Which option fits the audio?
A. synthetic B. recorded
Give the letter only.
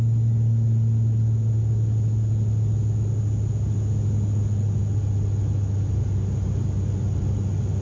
B